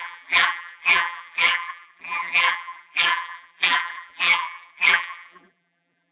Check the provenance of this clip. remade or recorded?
remade